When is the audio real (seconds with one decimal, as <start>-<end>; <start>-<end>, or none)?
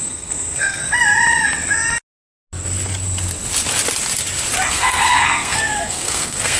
0.8-4.7